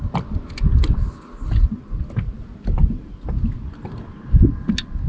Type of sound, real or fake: real